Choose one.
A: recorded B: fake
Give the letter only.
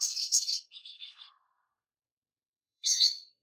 B